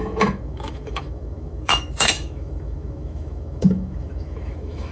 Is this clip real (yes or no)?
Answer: no